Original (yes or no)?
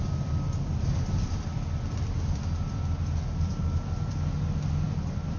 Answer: yes